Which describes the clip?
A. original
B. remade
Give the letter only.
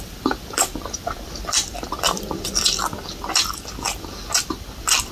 B